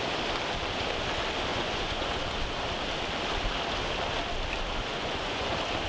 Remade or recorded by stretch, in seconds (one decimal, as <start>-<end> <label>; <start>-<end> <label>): 0.0-1.5 recorded; 1.5-2.1 remade; 2.1-4.8 recorded; 4.8-5.5 remade; 5.5-5.9 recorded